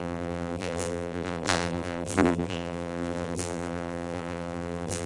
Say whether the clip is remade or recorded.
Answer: remade